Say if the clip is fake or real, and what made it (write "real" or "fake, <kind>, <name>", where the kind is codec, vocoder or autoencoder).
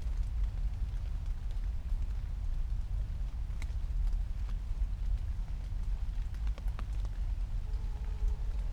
real